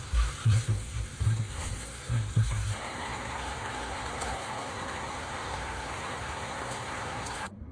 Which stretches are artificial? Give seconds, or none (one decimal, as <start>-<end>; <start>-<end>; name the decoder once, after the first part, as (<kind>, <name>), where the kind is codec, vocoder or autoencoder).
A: 0.0-7.7 (codec, SNAC)